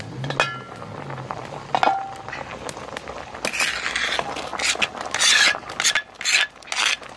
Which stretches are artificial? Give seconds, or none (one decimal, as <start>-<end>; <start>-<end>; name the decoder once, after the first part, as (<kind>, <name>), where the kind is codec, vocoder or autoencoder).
none